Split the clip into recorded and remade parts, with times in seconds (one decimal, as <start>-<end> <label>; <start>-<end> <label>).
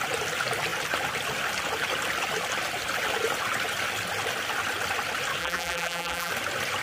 0.0-5.4 recorded; 5.4-6.3 remade; 6.3-6.8 recorded